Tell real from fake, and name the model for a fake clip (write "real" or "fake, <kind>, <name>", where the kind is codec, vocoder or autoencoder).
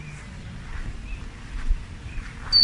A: real